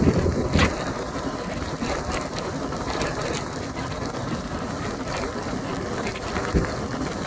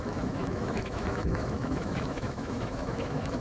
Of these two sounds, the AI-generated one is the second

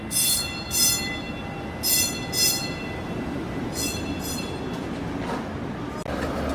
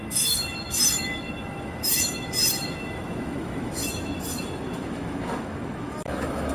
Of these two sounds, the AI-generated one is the second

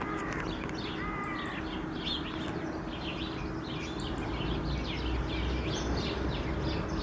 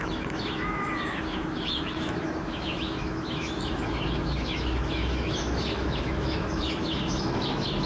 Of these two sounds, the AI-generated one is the second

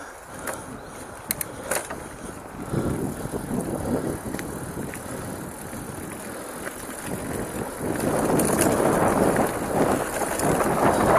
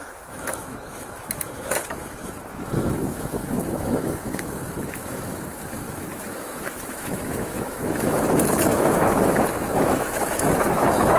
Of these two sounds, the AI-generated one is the second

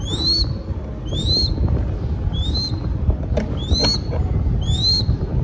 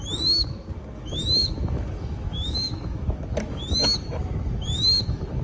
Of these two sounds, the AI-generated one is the second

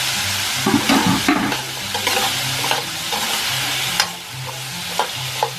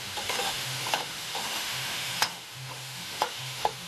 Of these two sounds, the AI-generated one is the second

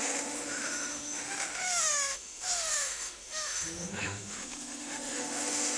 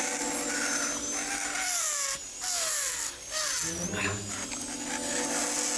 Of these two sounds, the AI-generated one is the first